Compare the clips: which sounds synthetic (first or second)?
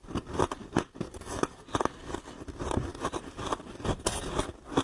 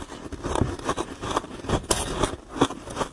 first